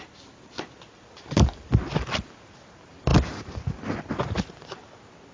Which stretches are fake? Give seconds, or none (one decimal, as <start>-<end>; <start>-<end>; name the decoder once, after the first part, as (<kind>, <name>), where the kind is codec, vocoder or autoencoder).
none